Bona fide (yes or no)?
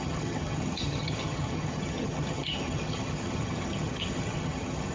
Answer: no